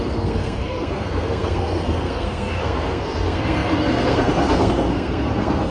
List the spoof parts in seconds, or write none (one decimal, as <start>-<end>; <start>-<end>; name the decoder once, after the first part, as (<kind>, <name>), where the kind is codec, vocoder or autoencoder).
0.0-5.7 (codec, SNAC)